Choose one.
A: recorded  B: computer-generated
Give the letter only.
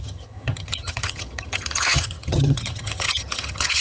B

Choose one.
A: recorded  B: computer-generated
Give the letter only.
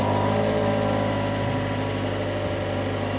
A